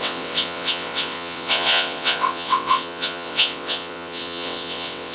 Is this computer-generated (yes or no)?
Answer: yes